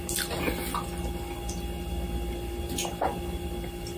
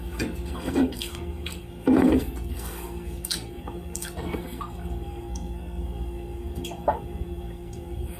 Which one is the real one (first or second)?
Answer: first